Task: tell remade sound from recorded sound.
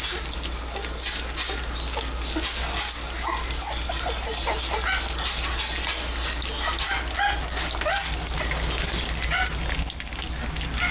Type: recorded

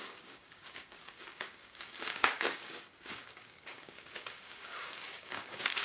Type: remade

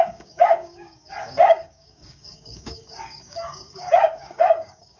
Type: remade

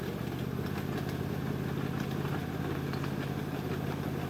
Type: recorded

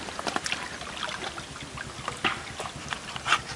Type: recorded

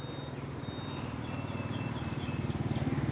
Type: recorded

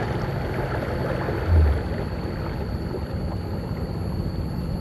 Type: recorded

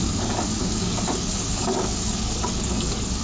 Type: remade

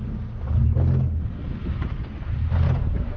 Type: recorded